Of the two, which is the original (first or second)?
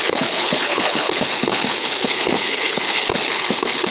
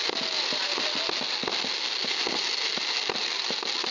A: second